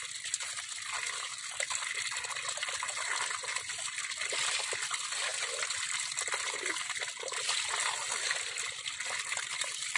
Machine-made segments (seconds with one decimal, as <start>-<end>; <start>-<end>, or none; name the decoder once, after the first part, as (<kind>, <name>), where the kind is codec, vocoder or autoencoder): none